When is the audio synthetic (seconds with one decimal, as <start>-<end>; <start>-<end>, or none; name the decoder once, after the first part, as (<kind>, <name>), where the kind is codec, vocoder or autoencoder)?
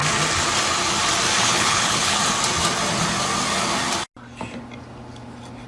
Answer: 1.4-2.2 (codec, HILCodec)